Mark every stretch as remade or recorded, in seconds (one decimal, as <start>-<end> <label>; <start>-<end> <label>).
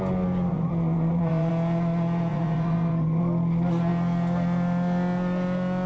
0.0-0.5 recorded; 0.5-1.5 remade; 1.5-2.3 recorded; 2.3-3.2 remade; 3.2-5.9 recorded